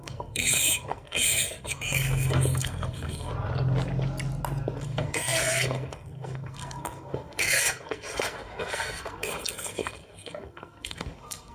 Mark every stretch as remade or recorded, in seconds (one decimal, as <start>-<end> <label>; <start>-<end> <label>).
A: 0.0-3.3 remade; 3.3-4.8 recorded; 4.8-11.5 remade